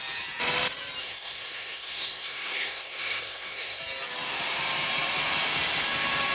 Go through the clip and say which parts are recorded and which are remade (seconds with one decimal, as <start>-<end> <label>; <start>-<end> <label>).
0.0-1.0 recorded; 1.0-3.8 remade; 3.8-6.3 recorded